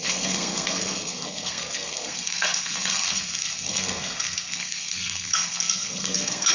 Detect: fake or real fake